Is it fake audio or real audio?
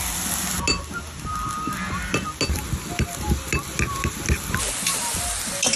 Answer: real